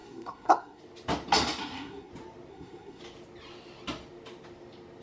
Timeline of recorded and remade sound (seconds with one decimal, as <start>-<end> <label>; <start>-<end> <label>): 0.0-0.8 remade; 0.8-1.6 recorded; 1.6-2.1 remade; 2.1-2.5 recorded; 2.5-3.0 remade; 3.0-5.0 recorded